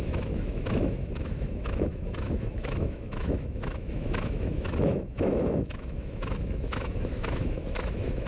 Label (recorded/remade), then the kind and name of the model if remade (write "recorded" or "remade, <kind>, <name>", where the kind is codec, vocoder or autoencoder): remade, autoencoder, DAC-VAE